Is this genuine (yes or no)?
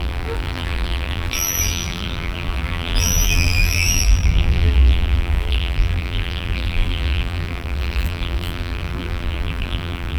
no